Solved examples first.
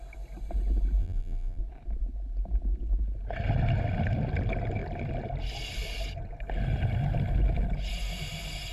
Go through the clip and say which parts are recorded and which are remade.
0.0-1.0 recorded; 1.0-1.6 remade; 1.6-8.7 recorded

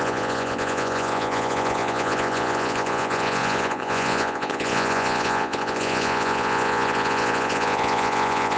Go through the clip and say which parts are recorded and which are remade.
0.0-8.6 remade